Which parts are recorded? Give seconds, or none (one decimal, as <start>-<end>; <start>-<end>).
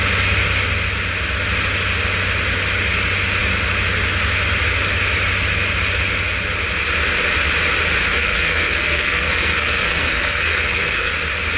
0.0-8.1; 11.1-11.6